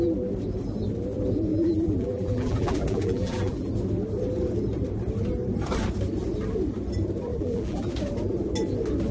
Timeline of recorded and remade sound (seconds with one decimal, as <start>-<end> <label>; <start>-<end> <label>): 0.0-1.5 recorded; 1.5-3.7 remade; 3.7-7.3 recorded; 7.3-7.9 remade; 7.9-9.1 recorded